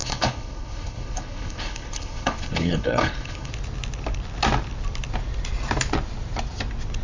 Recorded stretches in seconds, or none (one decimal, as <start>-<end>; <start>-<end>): 3.5-7.0